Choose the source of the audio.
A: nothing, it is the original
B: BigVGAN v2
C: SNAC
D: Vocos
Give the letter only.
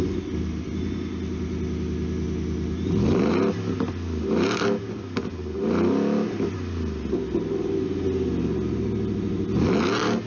A